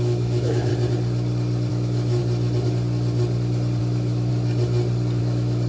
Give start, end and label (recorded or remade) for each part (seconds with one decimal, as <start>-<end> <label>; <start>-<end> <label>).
0.0-0.7 remade; 0.7-1.7 recorded; 1.7-2.2 remade; 2.2-3.8 recorded; 3.8-4.3 remade; 4.3-5.2 recorded; 5.2-5.7 remade